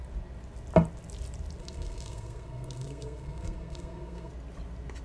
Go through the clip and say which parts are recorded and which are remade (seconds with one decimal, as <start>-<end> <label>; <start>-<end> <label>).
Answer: 0.0-1.6 recorded; 1.6-4.3 remade; 4.3-5.0 recorded